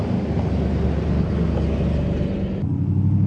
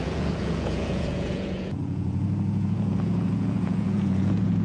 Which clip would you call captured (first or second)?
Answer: first